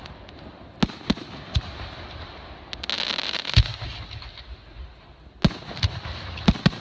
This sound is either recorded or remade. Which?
recorded